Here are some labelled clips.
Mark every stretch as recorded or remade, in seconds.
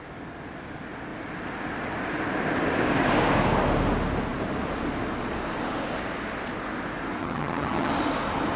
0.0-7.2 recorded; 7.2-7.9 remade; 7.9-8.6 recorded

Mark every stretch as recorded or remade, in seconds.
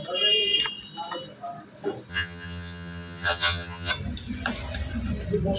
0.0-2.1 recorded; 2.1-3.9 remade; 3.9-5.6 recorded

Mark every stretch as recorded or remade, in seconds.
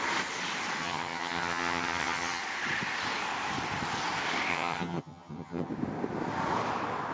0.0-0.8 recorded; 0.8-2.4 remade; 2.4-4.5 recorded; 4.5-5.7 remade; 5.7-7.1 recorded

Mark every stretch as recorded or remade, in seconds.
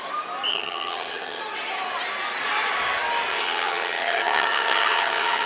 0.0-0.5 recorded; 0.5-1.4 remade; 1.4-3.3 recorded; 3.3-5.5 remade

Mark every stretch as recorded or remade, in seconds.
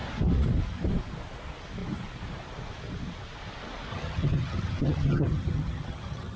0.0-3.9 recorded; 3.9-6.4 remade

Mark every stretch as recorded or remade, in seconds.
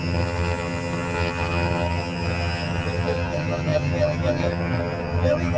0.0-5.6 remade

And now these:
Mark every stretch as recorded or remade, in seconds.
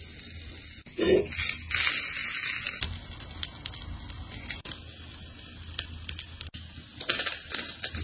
0.0-8.0 recorded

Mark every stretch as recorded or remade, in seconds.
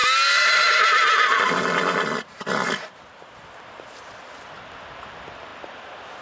0.0-6.2 recorded